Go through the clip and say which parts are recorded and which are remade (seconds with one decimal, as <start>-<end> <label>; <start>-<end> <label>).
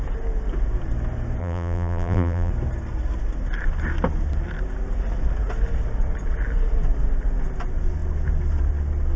0.0-1.4 recorded; 1.4-2.5 remade; 2.5-9.2 recorded